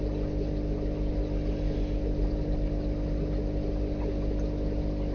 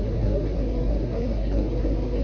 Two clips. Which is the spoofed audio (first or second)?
second